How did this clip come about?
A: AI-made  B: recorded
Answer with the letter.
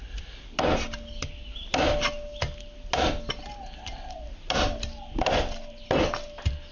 B